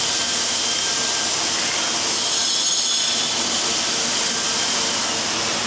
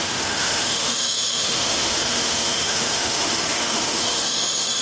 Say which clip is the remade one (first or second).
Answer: second